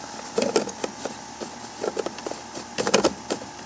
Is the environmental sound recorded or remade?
remade